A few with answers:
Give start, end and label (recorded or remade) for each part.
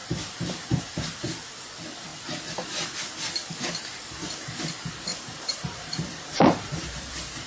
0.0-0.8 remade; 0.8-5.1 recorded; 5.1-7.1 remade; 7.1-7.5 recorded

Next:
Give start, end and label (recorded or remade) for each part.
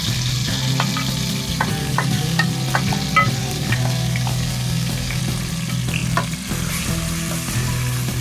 0.0-1.8 recorded; 1.8-2.5 remade; 2.5-3.4 recorded; 3.4-5.2 remade; 5.2-8.2 recorded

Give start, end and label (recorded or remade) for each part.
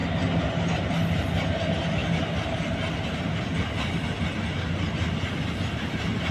0.0-6.3 recorded